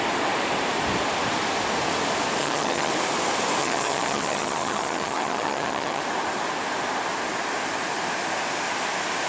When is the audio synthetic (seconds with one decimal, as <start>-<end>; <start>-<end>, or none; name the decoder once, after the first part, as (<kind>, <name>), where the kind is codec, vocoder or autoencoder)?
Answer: 2.4-2.9 (vocoder, HiFi-GAN); 3.6-6.0